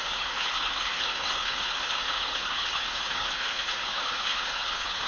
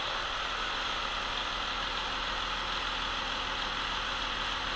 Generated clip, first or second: first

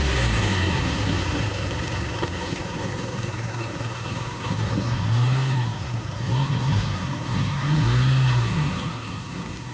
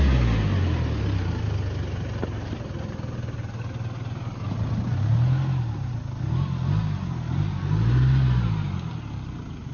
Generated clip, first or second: first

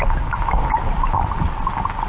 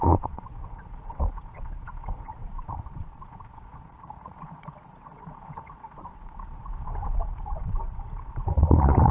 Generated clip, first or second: second